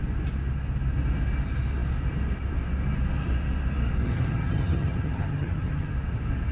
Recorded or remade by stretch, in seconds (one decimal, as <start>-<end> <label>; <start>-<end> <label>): 0.0-4.0 recorded; 4.0-5.9 remade; 5.9-6.5 recorded